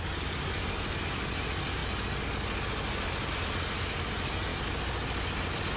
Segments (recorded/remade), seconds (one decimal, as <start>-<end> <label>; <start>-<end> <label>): 0.0-5.8 recorded